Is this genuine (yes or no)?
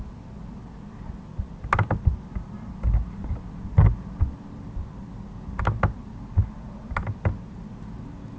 yes